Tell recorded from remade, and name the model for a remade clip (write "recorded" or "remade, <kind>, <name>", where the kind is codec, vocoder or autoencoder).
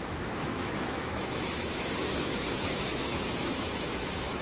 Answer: remade, autoencoder, DAC-VAE